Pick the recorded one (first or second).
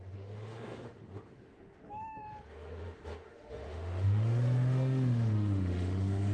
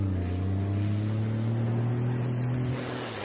second